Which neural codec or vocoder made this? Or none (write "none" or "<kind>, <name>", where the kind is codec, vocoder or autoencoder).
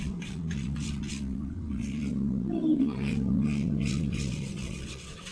vocoder, WaveNeXt